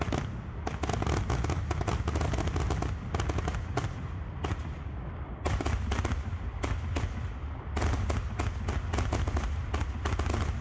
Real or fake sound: real